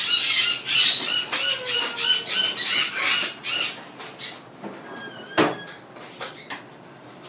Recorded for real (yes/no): yes